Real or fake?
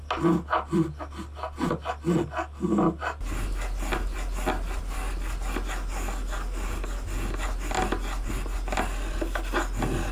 real